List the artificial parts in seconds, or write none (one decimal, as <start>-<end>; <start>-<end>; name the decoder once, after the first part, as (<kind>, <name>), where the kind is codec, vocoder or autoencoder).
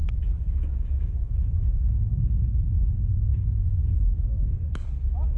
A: 0.0-1.4 (autoencoder, DAC-VAE); 3.3-4.3